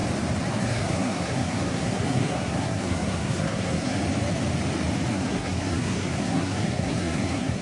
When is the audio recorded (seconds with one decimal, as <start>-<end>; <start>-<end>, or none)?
0.0-0.5; 4.0-5.1